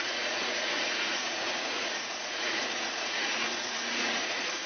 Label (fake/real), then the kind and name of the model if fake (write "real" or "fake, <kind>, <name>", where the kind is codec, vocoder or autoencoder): fake, vocoder, Vocos